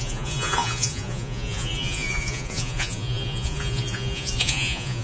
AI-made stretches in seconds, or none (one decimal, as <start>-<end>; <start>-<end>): 0.0-5.0